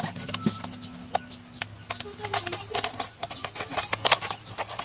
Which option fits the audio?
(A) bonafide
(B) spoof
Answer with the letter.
A